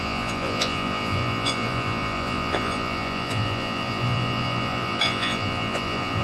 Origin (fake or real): fake